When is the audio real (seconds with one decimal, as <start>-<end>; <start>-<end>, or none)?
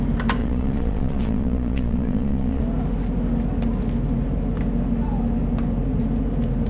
0.0-0.4; 2.6-6.7